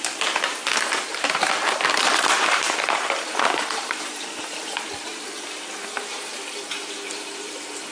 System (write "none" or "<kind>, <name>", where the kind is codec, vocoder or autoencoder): vocoder, BigVGAN v2